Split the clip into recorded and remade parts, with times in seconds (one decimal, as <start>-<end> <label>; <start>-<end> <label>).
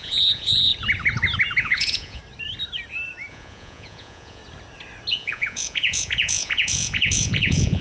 0.0-0.7 remade; 0.7-1.6 recorded; 1.6-2.2 remade; 2.2-3.3 recorded; 3.3-4.4 remade; 4.4-5.1 recorded; 5.1-7.8 remade